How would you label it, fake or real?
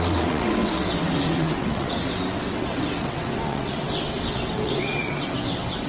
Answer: fake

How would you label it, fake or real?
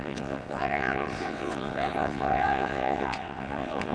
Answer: fake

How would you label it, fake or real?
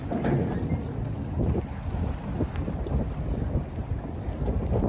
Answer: real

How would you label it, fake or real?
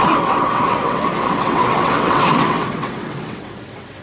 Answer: fake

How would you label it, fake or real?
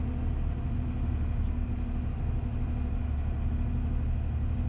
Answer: real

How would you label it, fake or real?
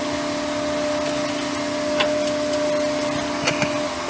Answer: real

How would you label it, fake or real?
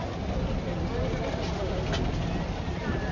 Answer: real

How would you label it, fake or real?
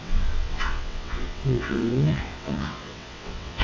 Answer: fake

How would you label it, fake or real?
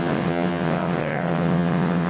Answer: fake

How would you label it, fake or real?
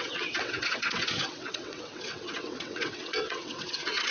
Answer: fake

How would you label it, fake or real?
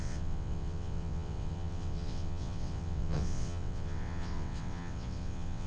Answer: fake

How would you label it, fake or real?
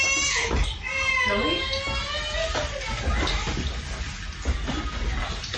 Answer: real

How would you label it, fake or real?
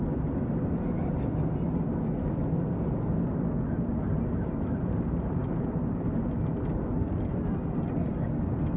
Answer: real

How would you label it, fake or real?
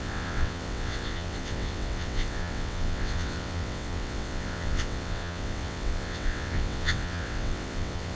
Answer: fake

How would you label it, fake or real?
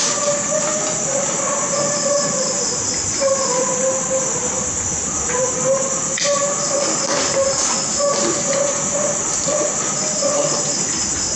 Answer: real